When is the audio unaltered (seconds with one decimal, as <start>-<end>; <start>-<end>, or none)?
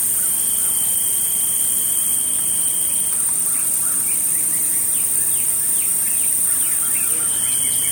0.0-0.6; 1.3-2.1; 6.8-7.9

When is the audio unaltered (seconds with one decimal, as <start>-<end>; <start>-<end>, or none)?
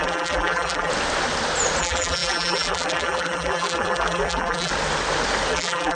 0.9-1.8; 4.7-5.5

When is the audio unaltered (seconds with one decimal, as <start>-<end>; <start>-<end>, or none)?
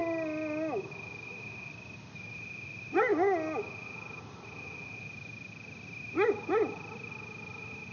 0.0-7.9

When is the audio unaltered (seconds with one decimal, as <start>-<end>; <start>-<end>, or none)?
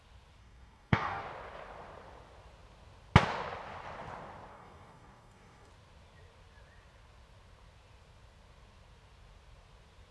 0.0-0.4; 1.2-4.5; 5.7-10.1